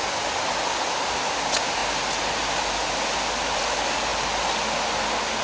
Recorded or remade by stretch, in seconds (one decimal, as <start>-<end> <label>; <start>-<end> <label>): 0.0-5.4 recorded